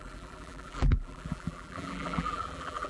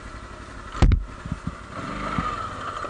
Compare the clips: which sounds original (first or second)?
second